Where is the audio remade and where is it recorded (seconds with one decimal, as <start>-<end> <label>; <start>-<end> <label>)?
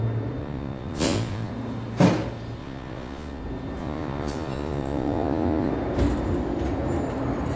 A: 0.0-0.4 recorded; 0.4-1.5 remade; 1.5-2.6 recorded; 2.6-3.4 remade; 3.4-3.8 recorded; 3.8-5.7 remade; 5.7-7.6 recorded